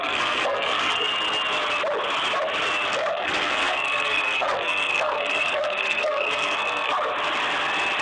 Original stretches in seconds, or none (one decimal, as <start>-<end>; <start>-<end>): 1.1-2.9; 6.9-8.0